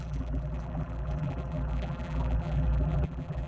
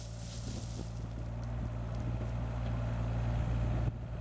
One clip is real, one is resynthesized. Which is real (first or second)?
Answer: second